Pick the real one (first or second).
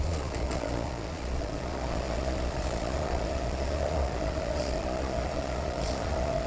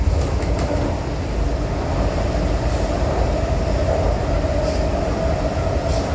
second